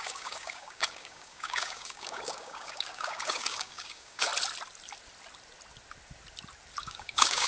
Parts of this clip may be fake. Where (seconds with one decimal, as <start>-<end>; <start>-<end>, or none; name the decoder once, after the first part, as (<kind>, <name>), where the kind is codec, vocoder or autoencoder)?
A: 0.0-4.3 (codec, DAC); 6.8-7.5